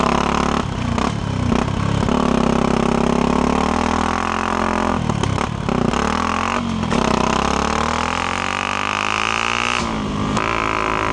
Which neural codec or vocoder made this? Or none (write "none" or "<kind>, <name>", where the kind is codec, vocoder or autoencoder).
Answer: none